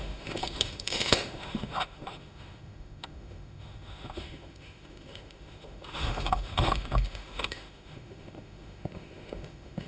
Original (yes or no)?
no